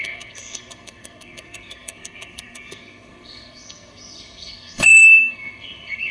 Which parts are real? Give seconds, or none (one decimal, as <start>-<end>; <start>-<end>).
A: none